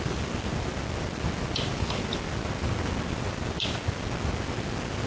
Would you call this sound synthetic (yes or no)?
no